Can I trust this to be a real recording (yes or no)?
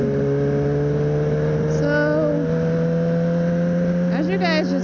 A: yes